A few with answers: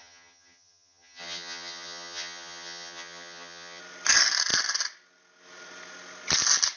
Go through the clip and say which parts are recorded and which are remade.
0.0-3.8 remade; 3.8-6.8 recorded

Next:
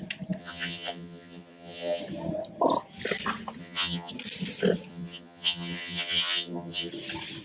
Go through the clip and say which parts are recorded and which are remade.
0.0-0.4 recorded; 0.4-2.0 remade; 2.0-3.6 recorded; 3.6-4.1 remade; 4.1-4.9 recorded; 4.9-6.9 remade; 6.9-7.4 recorded